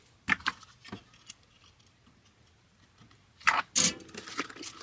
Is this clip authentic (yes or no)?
yes